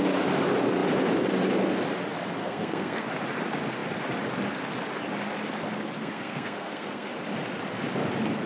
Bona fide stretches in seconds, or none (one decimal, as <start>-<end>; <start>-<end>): 0.0-2.4; 3.1-6.0; 7.1-8.5